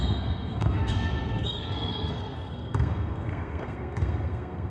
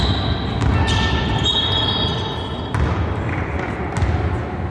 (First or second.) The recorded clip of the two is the second